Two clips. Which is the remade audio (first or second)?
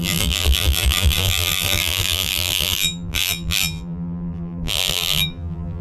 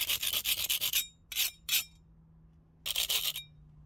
first